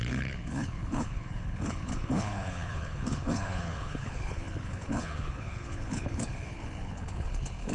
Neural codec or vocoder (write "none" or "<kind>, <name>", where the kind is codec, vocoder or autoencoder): codec, HILCodec